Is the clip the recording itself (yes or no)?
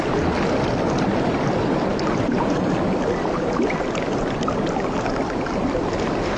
yes